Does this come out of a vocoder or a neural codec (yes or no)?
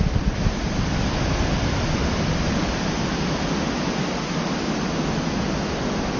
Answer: no